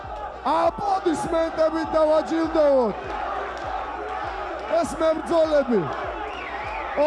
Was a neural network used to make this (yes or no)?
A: no